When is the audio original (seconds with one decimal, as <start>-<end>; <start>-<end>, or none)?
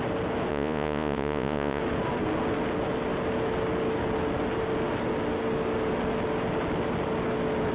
0.0-0.5; 1.8-7.7